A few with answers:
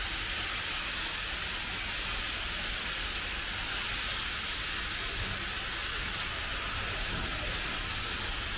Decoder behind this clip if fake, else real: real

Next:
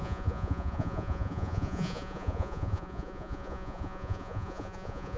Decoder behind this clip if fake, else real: fake, vocoder, Vocos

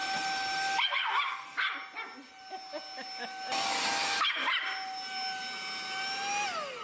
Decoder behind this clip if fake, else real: real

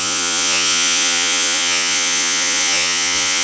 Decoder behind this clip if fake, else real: fake, vocoder, Vocos